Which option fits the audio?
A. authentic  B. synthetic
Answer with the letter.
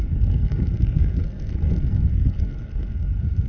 B